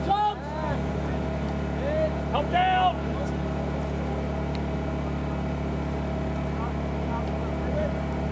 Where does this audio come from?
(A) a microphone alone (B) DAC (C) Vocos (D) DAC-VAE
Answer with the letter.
A